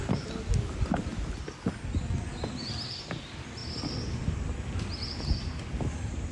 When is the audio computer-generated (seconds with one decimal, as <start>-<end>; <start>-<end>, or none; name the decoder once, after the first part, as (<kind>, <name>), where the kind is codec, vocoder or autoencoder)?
none